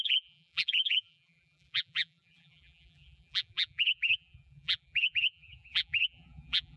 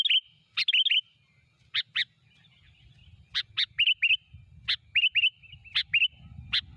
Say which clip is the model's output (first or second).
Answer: first